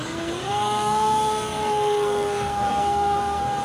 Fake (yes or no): yes